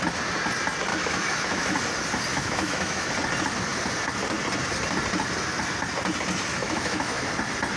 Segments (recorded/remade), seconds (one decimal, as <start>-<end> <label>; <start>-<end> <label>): 0.0-0.9 recorded; 0.9-1.7 remade; 1.7-2.3 recorded; 2.3-3.1 remade; 3.1-6.6 recorded; 6.6-7.2 remade; 7.2-7.8 recorded